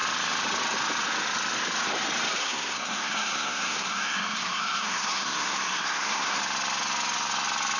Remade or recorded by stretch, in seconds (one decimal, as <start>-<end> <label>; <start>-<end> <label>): 0.0-2.4 recorded; 2.4-6.4 remade; 6.4-7.8 recorded